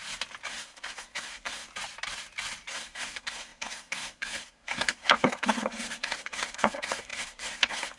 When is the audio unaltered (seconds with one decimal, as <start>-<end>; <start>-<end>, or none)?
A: 0.0-0.5; 1.7-2.7